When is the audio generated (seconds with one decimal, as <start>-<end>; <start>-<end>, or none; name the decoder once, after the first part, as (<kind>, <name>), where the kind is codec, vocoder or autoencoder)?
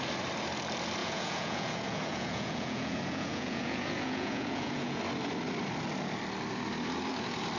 1.0-5.0 (vocoder, Vocos)